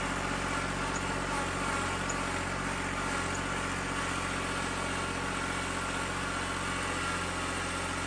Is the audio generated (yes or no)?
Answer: no